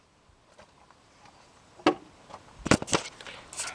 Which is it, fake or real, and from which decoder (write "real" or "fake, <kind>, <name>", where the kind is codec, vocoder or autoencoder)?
real